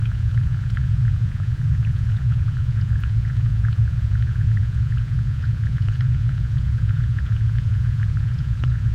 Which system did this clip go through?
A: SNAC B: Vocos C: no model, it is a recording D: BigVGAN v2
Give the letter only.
B